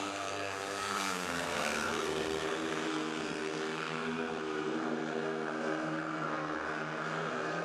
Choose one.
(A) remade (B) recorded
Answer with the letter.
A